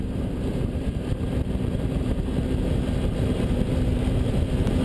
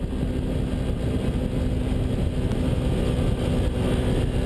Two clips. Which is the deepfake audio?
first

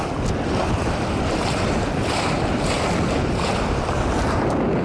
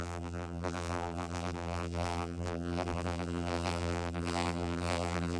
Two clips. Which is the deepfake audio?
second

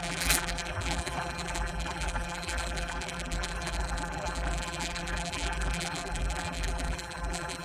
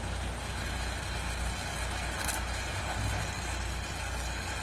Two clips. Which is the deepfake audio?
first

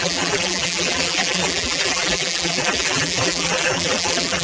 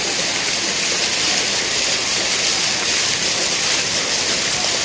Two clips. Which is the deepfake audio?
first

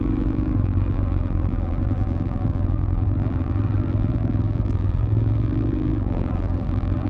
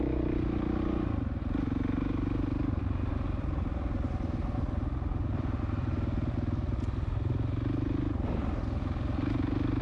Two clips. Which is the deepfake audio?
first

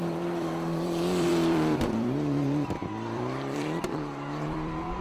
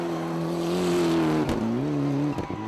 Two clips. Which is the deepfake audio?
first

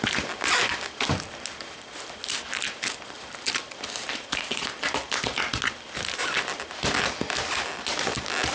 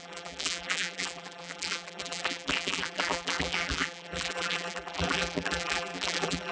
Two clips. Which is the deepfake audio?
second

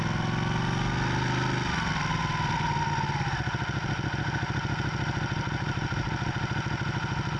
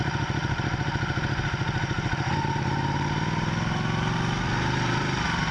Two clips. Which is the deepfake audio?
second